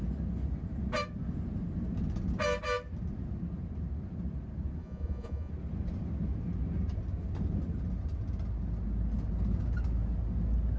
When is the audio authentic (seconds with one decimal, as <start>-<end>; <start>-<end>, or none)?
0.0-4.8; 5.5-10.8